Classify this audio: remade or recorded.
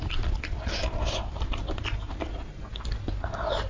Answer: recorded